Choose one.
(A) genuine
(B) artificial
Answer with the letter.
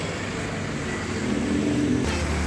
A